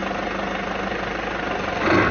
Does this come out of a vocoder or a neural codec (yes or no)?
no